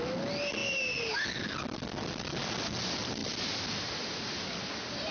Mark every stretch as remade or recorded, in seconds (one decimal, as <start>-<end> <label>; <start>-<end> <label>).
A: 0.0-5.1 recorded